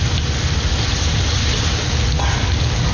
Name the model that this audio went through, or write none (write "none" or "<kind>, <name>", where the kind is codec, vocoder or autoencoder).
none